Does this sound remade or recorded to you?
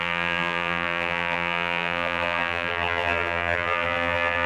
remade